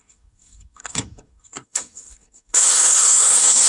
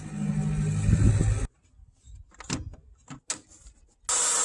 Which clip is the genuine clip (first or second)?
second